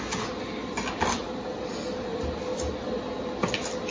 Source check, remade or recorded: recorded